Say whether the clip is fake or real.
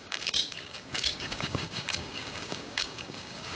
fake